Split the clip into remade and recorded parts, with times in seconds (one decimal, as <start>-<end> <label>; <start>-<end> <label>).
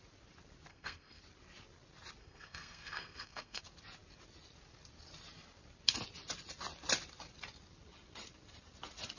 0.0-0.7 recorded; 0.7-1.2 remade; 1.2-2.2 recorded; 2.2-3.6 remade; 3.6-9.2 recorded